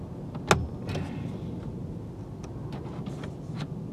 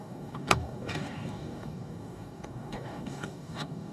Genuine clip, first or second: first